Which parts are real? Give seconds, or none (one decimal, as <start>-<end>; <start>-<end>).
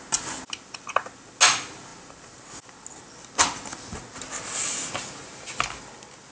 0.0-6.3